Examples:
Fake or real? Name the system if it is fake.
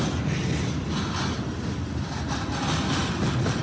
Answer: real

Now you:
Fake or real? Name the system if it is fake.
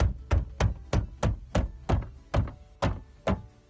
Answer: real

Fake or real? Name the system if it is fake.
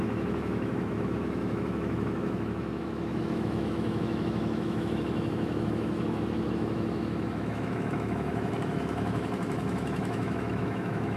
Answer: fake, autoencoder, DAC-VAE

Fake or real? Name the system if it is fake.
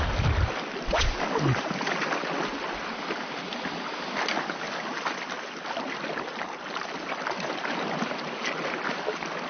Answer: real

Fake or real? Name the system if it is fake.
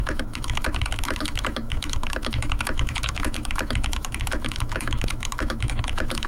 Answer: fake, autoencoder, DAC-VAE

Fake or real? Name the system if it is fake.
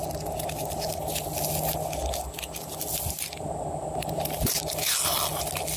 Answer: real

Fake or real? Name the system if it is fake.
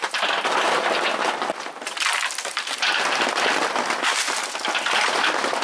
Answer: real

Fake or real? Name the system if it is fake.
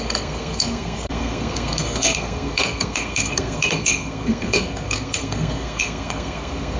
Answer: fake, codec, SNAC